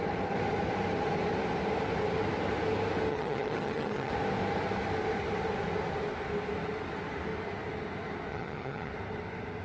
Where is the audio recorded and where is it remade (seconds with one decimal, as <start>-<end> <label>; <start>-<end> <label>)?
0.0-3.1 recorded; 3.1-4.1 remade; 4.1-8.3 recorded; 8.3-8.9 remade; 8.9-9.6 recorded